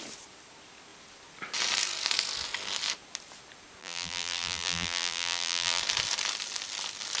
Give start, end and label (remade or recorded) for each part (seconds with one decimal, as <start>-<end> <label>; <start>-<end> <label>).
0.0-3.8 recorded; 3.8-5.8 remade; 5.8-7.2 recorded